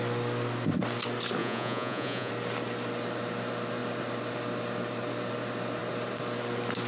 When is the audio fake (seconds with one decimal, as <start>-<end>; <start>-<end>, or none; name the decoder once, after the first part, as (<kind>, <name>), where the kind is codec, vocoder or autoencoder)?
1.4-2.3 (vocoder, Vocos)